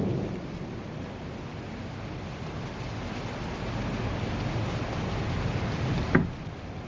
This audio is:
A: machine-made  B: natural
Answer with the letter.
B